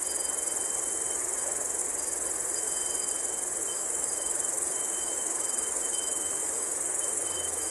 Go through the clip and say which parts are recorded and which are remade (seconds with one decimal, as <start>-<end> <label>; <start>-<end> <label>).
0.0-3.6 recorded; 3.6-7.7 remade